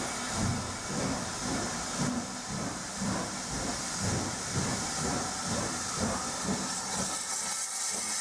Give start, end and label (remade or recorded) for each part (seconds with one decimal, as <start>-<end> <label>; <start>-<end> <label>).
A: 0.0-8.2 recorded

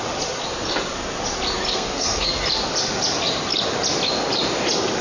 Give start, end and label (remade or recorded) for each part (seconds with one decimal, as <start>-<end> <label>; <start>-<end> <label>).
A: 0.0-1.7 recorded; 1.7-2.4 remade; 2.4-5.0 recorded

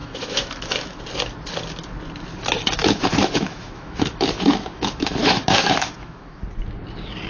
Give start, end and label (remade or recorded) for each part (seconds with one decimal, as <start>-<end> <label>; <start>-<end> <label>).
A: 0.0-1.0 remade; 1.0-2.8 recorded; 2.8-6.4 remade; 6.4-7.3 recorded

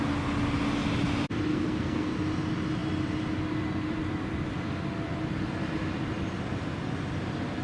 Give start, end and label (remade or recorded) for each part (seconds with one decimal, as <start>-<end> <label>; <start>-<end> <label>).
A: 0.0-1.5 recorded; 1.5-2.1 remade; 2.1-7.6 recorded

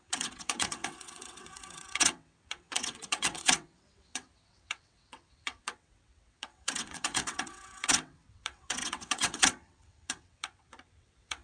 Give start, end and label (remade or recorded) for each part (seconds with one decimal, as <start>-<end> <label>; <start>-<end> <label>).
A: 0.0-11.4 remade

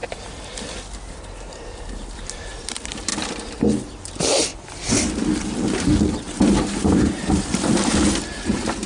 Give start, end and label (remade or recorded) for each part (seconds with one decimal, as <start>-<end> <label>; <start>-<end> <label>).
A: 0.0-1.2 recorded; 1.2-3.1 remade; 3.1-3.8 recorded; 3.8-4.5 remade; 4.5-6.6 recorded; 6.6-8.9 remade

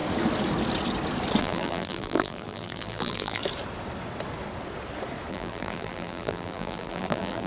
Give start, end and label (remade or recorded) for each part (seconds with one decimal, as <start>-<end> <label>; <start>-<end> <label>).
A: 0.0-1.4 recorded; 1.4-3.4 remade; 3.4-5.3 recorded; 5.3-7.5 remade